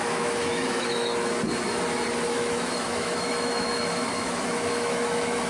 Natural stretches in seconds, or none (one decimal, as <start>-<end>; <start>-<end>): 1.1-2.3